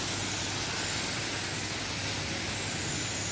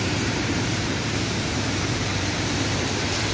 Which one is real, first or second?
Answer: first